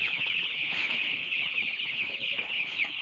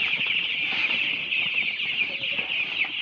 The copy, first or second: first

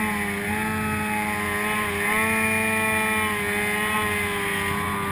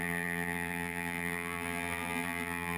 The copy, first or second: second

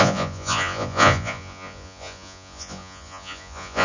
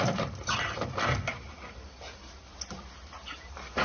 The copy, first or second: first